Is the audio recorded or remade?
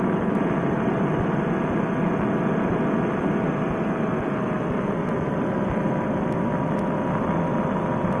recorded